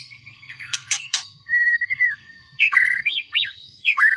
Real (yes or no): no